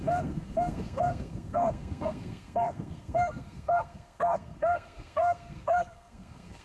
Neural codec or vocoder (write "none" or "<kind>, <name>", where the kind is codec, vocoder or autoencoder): codec, SNAC